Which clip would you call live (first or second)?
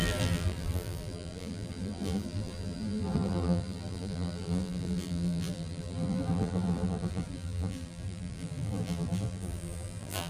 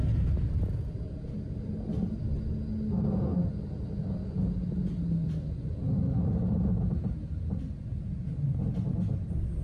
second